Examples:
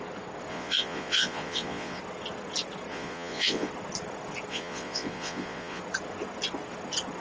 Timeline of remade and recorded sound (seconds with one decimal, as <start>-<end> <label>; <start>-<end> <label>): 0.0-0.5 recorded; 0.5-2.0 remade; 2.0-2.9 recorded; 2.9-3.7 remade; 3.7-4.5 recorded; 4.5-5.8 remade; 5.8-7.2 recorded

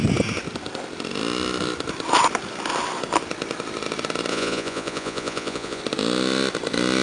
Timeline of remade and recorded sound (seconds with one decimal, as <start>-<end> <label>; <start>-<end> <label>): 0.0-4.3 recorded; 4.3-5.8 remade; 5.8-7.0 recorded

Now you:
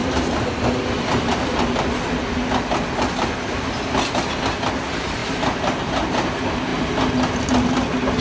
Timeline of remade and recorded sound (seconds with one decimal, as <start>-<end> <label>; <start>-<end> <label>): 0.0-8.2 recorded